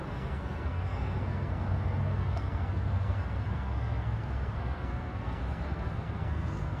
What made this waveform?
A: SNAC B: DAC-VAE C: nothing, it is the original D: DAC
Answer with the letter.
A